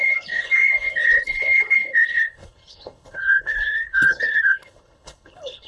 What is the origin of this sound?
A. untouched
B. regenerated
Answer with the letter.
B